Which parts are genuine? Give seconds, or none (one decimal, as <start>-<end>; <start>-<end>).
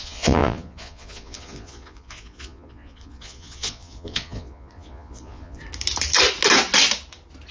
5.6-7.5